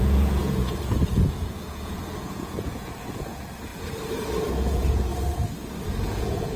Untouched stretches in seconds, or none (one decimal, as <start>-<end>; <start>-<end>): 3.7-4.5; 5.1-6.0